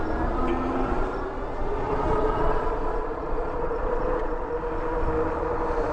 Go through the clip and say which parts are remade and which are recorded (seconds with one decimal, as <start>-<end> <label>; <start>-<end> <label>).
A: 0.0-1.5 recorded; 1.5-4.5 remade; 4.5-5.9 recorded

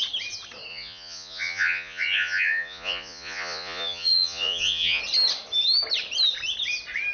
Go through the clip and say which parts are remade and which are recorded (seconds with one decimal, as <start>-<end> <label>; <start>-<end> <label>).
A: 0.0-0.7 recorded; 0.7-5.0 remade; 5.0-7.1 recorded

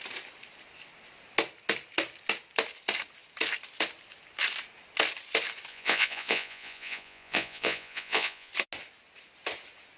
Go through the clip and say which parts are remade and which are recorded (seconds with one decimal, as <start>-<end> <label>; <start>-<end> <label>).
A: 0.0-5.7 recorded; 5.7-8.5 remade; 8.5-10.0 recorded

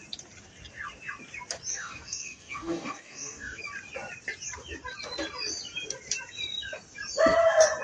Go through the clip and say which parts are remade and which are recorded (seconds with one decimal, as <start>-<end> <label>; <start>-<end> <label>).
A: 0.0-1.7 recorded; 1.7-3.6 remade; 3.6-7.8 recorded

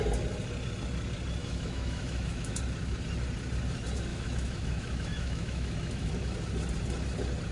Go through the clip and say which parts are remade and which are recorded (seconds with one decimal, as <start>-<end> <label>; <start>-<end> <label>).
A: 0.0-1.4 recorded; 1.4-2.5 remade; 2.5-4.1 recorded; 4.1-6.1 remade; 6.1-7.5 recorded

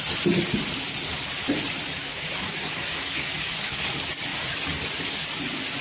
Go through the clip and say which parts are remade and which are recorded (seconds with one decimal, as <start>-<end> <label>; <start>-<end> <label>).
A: 0.0-2.0 recorded; 2.0-3.9 remade; 3.9-5.8 recorded

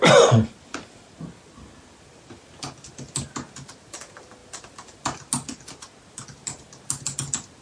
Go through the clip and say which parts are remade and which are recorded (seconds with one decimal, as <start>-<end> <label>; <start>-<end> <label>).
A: 0.0-7.6 recorded